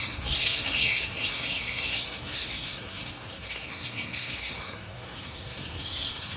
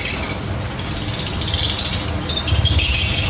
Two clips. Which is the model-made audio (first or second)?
first